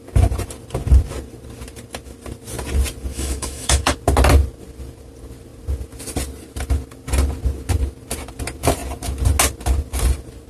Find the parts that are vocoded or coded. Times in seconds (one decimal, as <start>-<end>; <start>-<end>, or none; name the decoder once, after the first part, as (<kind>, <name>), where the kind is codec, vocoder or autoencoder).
3.1-3.9 (autoencoder, DAC-VAE)